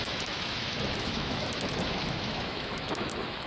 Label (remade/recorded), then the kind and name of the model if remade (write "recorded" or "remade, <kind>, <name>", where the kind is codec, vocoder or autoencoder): remade, autoencoder, DAC-VAE